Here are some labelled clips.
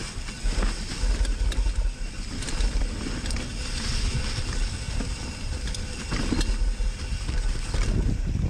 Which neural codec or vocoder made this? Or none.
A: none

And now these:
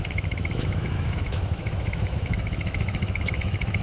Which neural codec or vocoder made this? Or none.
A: autoencoder, DAC-VAE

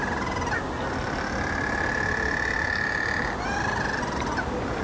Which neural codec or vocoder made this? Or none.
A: none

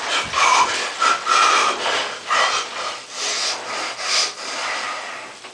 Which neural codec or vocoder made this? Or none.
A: none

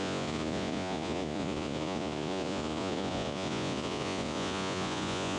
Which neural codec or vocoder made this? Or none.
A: vocoder, Vocos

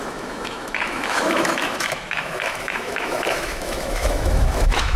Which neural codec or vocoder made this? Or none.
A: autoencoder, DAC-VAE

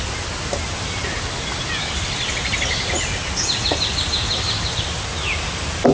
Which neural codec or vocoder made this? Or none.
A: none